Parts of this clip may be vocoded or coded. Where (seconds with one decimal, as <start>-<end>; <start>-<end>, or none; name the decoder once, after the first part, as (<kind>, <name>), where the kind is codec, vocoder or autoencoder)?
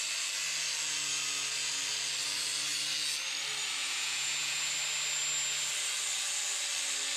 3.8-4.7 (vocoder, Vocos)